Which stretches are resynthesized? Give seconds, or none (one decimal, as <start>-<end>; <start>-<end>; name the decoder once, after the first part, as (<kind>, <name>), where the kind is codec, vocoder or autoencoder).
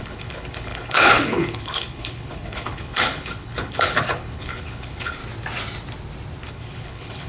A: 0.0-5.2 (codec, HILCodec); 6.5-7.3